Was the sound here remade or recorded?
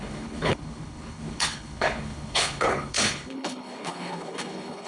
remade